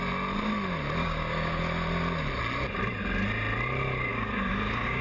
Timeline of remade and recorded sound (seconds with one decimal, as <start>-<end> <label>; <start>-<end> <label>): 0.0-1.0 recorded; 1.0-1.6 remade; 1.6-4.1 recorded; 4.1-5.0 remade